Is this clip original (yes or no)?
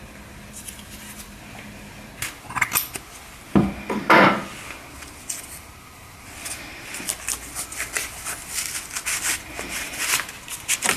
yes